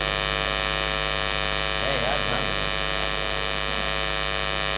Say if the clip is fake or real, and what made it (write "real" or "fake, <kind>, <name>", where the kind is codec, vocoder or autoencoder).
real